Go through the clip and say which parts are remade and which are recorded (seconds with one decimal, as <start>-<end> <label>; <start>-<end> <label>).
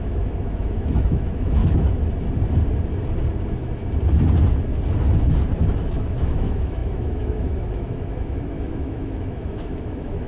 0.0-1.6 remade; 1.6-3.4 recorded; 3.4-3.8 remade; 3.8-5.8 recorded; 5.8-10.3 remade